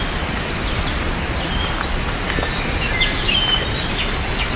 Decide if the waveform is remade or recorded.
recorded